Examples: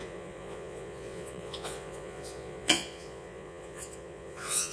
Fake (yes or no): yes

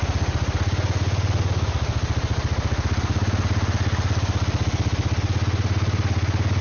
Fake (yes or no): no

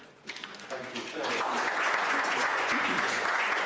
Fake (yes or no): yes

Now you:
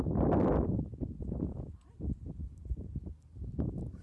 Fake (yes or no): no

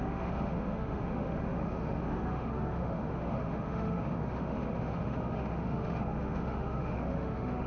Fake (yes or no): yes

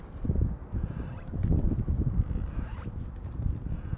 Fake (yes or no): no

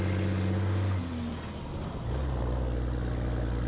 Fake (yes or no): no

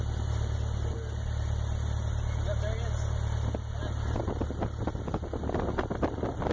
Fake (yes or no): no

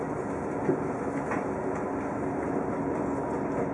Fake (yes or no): no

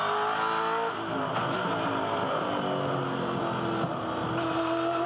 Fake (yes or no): no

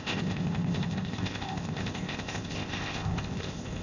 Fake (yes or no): yes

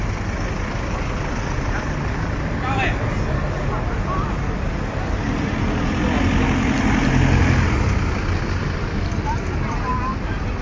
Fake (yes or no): no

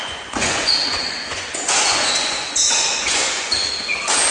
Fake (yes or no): yes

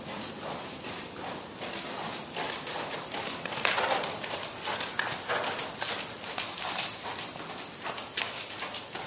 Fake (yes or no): no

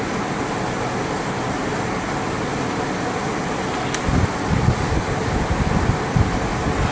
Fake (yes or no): no